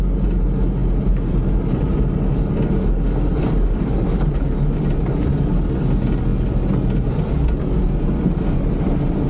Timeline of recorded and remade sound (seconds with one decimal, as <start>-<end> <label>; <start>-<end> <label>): 0.0-9.3 recorded